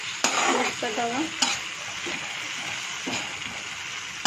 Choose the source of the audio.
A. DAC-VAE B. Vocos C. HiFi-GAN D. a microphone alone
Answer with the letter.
D